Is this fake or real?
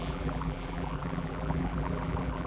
fake